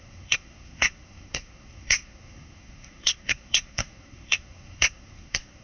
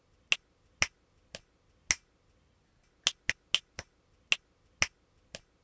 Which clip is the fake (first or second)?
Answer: first